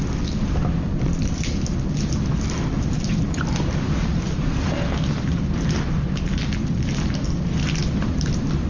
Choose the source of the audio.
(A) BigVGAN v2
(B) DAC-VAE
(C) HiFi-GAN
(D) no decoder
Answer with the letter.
A